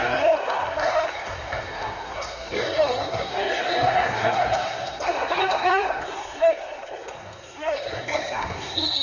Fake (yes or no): yes